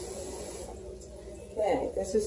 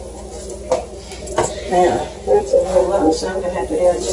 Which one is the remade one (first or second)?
first